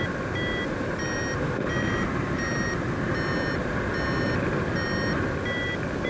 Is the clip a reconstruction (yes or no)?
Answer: no